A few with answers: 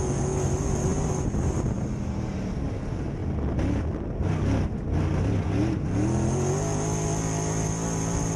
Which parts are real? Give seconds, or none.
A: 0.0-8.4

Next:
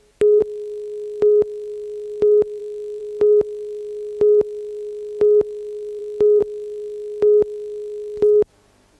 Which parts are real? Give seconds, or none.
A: 0.0-9.0